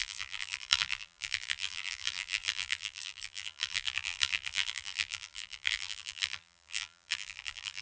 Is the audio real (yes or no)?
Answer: no